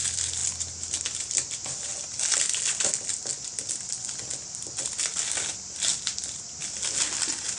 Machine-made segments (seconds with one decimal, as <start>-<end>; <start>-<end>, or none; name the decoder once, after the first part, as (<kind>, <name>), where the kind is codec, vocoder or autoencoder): none